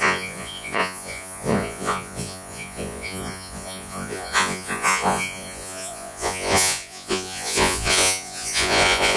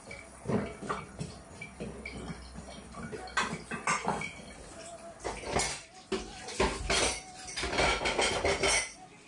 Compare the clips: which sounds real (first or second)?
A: second